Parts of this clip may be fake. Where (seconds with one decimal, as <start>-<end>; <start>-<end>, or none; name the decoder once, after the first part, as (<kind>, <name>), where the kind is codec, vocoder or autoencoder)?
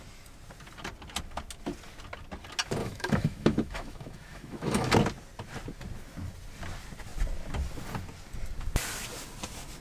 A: 2.8-4.9 (autoencoder, DAC-VAE)